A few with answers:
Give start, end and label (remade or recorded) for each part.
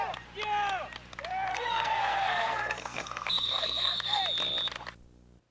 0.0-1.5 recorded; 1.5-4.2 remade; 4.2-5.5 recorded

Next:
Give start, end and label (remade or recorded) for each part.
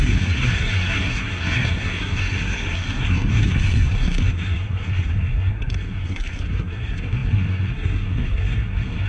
0.0-9.1 remade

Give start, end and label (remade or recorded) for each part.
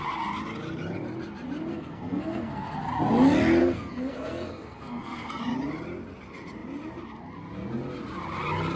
0.0-1.7 recorded; 1.7-2.8 remade; 2.8-3.6 recorded; 3.6-5.4 remade; 5.4-8.8 recorded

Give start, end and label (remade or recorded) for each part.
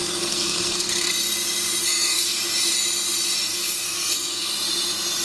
0.0-1.1 remade; 1.1-1.8 recorded; 1.8-2.4 remade; 2.4-3.5 recorded; 3.5-4.5 remade; 4.5-5.2 recorded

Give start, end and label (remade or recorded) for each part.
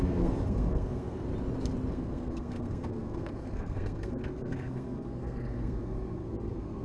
0.0-1.3 remade; 1.3-1.9 recorded; 1.9-6.8 remade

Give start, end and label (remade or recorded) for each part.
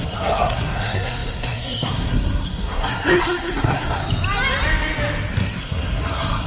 0.0-4.0 remade; 4.0-5.3 recorded; 5.3-6.5 remade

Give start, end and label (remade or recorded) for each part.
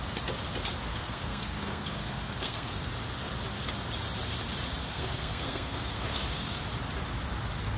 0.0-0.9 recorded; 0.9-2.9 remade; 2.9-4.8 recorded; 4.8-6.6 remade; 6.6-7.8 recorded